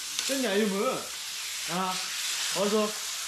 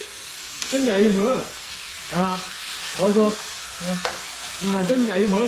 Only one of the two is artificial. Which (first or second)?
second